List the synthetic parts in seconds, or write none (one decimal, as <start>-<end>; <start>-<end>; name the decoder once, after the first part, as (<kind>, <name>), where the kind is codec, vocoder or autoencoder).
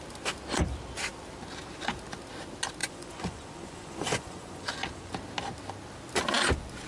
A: 2.8-5.1 (vocoder, Vocos)